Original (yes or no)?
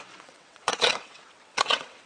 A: no